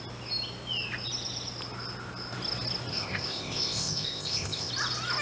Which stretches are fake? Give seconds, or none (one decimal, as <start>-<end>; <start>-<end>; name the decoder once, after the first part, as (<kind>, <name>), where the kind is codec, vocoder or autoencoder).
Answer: 2.9-4.7 (codec, ZipCodec)